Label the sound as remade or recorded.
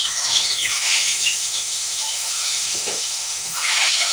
remade